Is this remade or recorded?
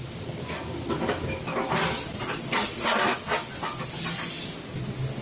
recorded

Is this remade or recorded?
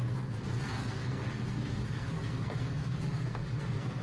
remade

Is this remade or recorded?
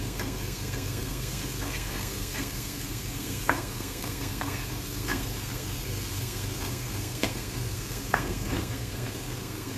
remade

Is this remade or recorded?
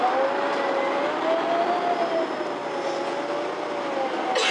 recorded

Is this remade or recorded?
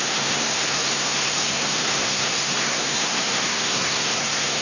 remade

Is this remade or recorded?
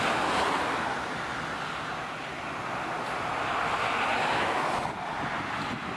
recorded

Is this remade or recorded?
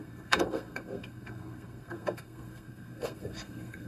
remade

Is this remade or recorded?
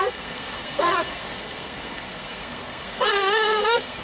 remade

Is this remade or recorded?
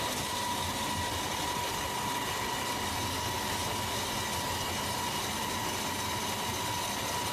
recorded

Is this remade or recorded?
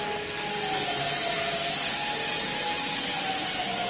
recorded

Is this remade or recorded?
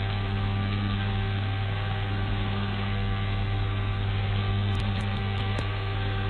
remade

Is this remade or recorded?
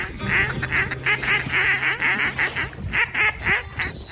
recorded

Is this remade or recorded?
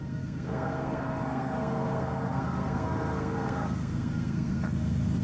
remade